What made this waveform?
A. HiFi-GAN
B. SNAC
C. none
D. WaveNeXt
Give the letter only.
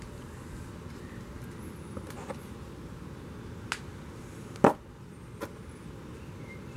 C